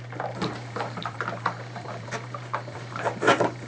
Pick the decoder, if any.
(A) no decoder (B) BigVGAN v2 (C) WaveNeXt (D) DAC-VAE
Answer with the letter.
B